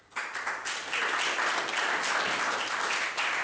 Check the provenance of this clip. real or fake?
real